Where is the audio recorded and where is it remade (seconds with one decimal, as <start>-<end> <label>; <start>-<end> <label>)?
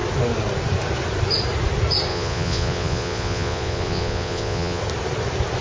0.0-2.1 recorded; 2.1-4.8 remade; 4.8-5.6 recorded